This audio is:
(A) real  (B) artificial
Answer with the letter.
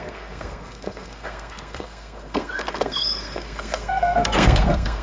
B